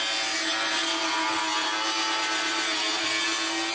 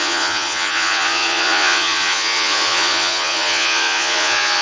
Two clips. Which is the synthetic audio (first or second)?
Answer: second